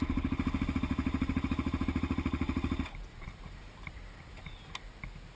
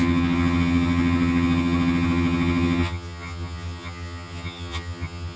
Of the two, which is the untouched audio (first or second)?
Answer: first